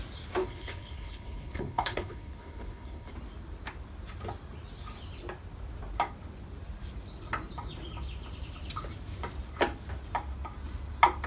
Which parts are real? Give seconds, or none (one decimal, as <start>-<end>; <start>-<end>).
0.0-0.4; 3.1-11.3